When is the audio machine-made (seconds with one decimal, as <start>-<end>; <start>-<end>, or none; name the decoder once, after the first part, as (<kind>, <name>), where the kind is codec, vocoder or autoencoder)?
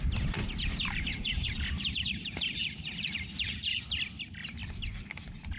0.4-3.8 (vocoder, BigVGAN v2)